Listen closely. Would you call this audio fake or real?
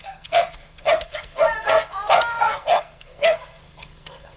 fake